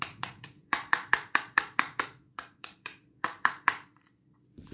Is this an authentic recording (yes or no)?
no